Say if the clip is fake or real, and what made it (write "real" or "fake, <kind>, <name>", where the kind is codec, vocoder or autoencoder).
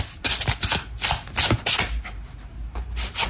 real